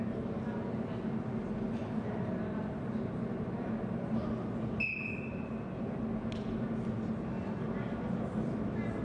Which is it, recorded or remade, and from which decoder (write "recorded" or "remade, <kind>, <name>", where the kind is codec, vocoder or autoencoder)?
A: recorded